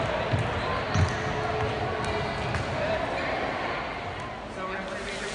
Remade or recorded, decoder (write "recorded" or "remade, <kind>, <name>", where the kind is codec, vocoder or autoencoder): recorded